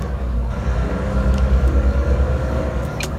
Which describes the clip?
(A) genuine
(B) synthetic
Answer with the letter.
B